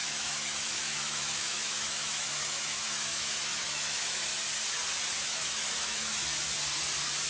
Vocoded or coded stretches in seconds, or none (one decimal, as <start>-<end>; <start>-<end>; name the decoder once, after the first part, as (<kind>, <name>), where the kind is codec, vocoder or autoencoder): 0.0-4.3 (autoencoder, DAC-VAE); 5.2-6.3